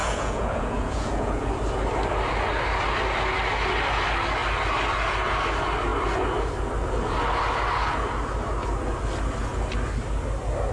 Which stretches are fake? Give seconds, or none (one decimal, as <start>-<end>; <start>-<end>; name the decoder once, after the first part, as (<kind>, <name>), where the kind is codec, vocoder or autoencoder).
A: 0.0-1.5 (vocoder, Vocos)